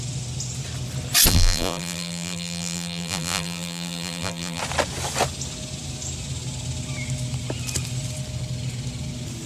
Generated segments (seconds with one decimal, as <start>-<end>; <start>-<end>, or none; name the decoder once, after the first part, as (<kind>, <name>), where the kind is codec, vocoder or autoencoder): 1.3-4.6 (vocoder, BigVGAN v2)